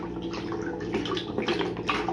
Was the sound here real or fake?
real